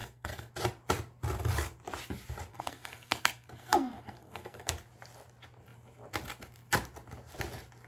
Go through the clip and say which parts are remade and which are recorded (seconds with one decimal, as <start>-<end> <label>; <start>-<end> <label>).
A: 0.0-0.5 remade; 0.5-2.5 recorded; 2.5-4.7 remade; 4.7-7.9 recorded